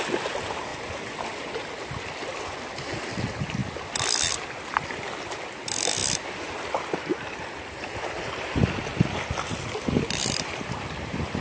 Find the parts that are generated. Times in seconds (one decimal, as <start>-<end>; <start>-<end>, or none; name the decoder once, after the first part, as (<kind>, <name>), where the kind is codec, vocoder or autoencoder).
none